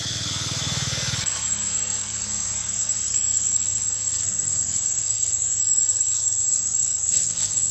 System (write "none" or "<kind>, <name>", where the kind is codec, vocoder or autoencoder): codec, SNAC